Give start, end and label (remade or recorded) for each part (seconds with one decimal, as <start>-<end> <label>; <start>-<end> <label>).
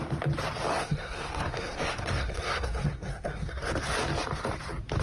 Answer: 0.0-0.7 recorded; 0.7-3.7 remade; 3.7-5.0 recorded